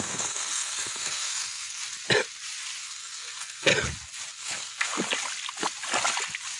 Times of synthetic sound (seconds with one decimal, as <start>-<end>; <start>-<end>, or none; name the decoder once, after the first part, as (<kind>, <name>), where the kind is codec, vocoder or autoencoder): 0.0-1.8 (codec, SNAC); 2.8-3.7; 4.3-4.9